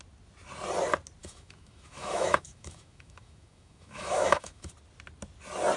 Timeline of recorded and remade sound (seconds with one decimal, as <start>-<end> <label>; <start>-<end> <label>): 0.0-1.2 recorded; 1.2-4.7 remade; 4.7-5.8 recorded